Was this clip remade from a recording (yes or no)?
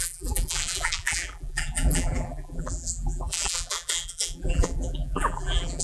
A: yes